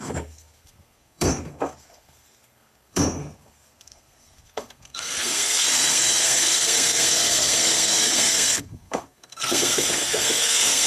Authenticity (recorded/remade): remade